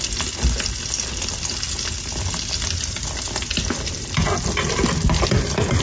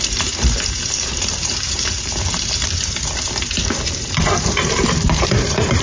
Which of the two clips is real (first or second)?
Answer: first